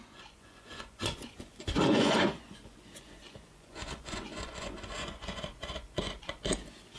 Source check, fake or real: fake